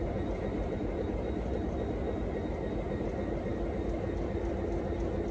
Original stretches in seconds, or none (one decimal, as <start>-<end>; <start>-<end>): 0.0-0.5; 1.7-5.3